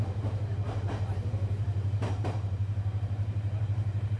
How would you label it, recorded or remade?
remade